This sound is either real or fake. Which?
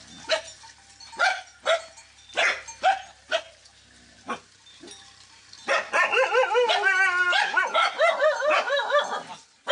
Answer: real